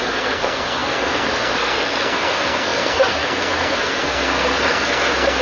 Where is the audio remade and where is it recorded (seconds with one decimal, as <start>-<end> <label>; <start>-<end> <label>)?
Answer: 0.0-5.4 remade